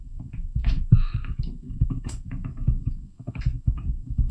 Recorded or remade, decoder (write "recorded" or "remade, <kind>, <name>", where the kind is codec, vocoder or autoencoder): remade, codec, SNAC